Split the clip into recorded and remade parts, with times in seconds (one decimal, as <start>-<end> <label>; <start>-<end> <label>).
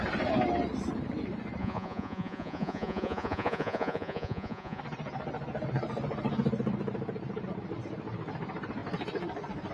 0.0-1.6 recorded; 1.6-4.8 remade; 4.8-9.7 recorded